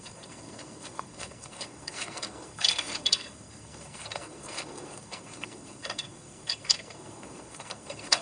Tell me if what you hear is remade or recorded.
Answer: remade